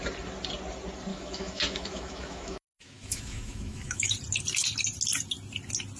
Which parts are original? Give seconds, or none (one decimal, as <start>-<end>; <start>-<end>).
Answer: 0.0-1.1; 4.1-6.0